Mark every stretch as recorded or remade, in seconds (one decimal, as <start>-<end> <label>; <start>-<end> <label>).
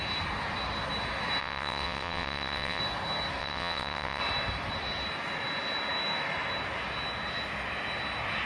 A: 0.0-1.4 recorded; 1.4-2.8 remade; 2.8-3.4 recorded; 3.4-4.2 remade; 4.2-8.5 recorded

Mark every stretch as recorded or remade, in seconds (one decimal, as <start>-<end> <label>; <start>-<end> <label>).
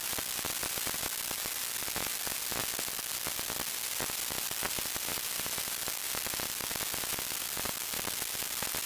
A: 0.0-5.1 recorded; 5.1-5.8 remade; 5.8-8.9 recorded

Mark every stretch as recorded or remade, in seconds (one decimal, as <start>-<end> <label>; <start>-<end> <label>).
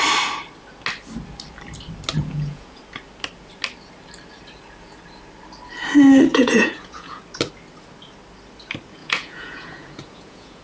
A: 0.0-2.2 recorded; 2.2-2.8 remade; 2.8-6.3 recorded; 6.3-7.2 remade; 7.2-9.0 recorded; 9.0-10.6 remade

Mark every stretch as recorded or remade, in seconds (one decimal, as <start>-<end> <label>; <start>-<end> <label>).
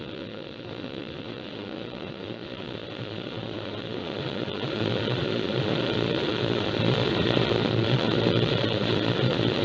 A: 0.0-9.6 remade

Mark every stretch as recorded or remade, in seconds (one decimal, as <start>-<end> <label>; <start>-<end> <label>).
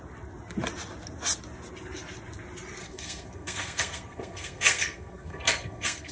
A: 0.0-2.8 recorded; 2.8-6.1 remade